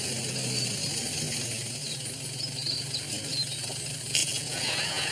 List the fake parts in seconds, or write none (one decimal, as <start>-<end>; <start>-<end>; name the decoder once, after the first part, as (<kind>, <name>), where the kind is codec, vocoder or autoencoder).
4.2-5.1 (vocoder, Vocos)